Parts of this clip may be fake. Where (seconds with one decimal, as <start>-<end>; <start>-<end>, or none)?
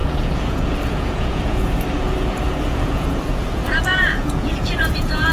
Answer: 0.0-5.3